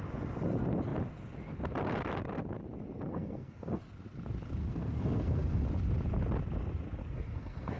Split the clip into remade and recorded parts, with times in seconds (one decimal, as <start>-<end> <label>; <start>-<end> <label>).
0.0-3.1 recorded; 3.1-3.8 remade; 3.8-4.6 recorded; 4.6-5.6 remade; 5.6-7.0 recorded; 7.0-7.8 remade